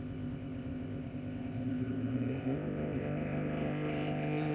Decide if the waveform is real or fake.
fake